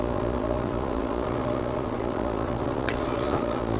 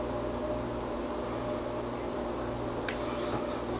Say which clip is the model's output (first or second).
first